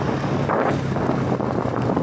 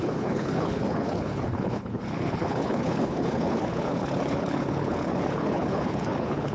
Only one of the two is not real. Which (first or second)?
second